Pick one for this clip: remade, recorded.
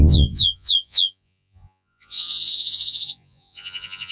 remade